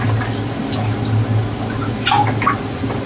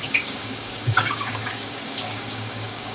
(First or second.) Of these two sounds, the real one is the first